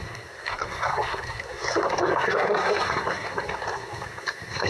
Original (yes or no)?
no